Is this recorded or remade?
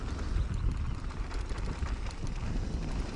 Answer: recorded